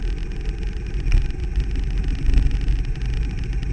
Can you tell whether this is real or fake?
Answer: real